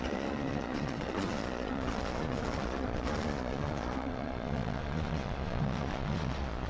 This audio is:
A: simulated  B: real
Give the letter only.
A